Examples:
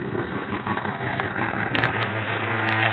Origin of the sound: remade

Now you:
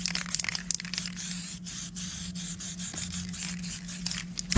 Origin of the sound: recorded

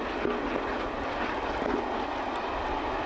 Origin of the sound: recorded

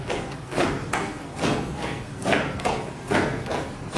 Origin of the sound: remade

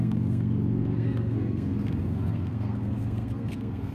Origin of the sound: remade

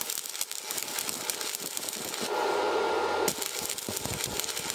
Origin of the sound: recorded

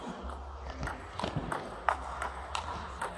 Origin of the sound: recorded